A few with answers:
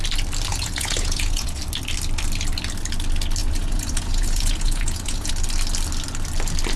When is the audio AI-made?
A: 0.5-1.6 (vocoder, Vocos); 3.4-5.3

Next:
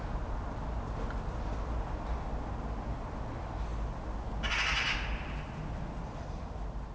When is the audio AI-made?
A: none

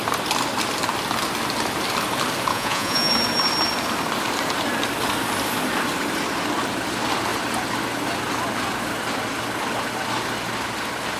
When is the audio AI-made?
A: 2.5-3.1 (vocoder, Vocos)